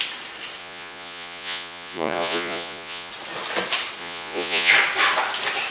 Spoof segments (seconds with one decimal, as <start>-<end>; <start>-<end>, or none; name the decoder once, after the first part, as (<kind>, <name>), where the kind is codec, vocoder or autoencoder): 0.6-3.1 (vocoder, Vocos); 4.0-4.7